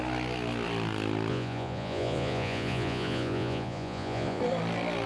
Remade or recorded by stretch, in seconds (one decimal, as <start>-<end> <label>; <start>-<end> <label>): 0.0-1.3 recorded; 1.3-4.4 remade; 4.4-5.1 recorded